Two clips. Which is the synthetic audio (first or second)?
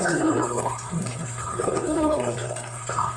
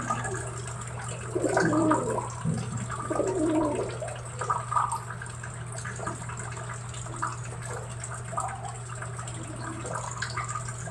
first